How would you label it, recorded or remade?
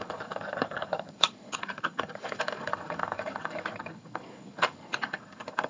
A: remade